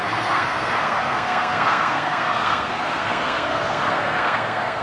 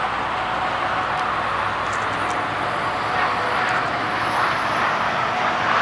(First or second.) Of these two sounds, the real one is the second